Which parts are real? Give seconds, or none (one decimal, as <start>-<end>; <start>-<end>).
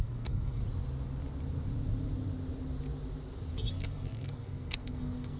0.6-3.7